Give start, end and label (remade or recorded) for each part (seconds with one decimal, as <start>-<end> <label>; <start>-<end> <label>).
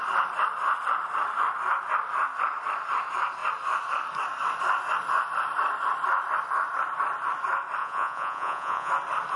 0.0-7.8 recorded; 7.8-8.9 remade; 8.9-9.4 recorded